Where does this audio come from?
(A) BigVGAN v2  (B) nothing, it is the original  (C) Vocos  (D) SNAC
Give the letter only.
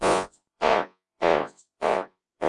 C